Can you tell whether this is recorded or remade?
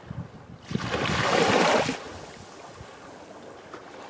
recorded